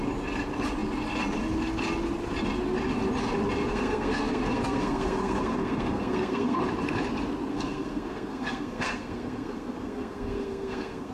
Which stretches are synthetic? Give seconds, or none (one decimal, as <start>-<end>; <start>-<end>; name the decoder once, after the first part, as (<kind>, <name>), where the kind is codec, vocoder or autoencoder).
3.7-6.6 (codec, SNAC); 7.5-11.1